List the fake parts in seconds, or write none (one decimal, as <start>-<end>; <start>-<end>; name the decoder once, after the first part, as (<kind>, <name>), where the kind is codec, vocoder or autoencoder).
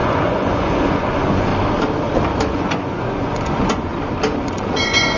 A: 0.0-1.5 (vocoder, Vocos); 2.5-3.9; 4.4-5.2